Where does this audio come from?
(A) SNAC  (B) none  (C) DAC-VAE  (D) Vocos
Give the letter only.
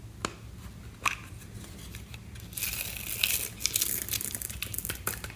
B